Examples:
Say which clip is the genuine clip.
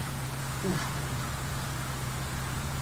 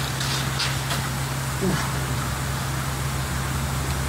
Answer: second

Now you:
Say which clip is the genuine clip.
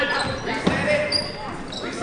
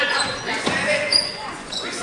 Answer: first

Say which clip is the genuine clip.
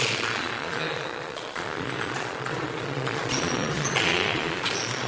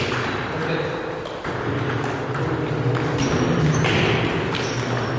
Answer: second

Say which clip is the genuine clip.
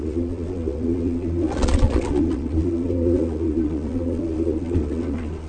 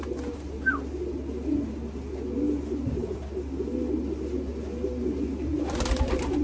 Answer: second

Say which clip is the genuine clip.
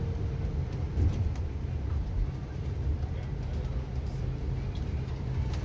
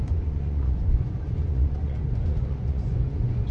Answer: first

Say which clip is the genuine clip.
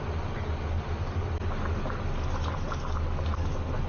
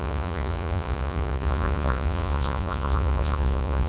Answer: first